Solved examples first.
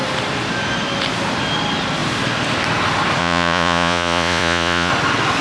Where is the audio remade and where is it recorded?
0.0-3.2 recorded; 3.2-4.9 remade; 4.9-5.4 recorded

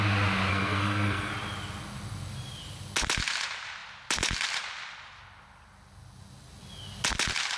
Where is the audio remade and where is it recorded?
0.0-0.5 recorded; 0.5-1.3 remade; 1.3-7.6 recorded

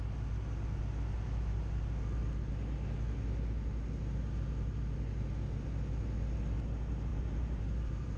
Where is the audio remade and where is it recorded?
0.0-7.1 recorded; 7.1-8.2 remade

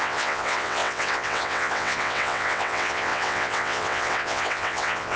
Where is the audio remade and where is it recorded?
0.0-5.2 remade

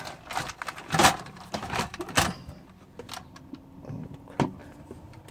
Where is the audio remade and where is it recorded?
0.0-1.0 recorded; 1.0-2.0 remade; 2.0-5.3 recorded